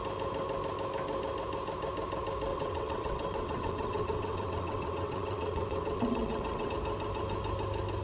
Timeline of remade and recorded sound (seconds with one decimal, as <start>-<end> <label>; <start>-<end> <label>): 0.0-2.5 recorded; 2.5-6.7 remade; 6.7-8.0 recorded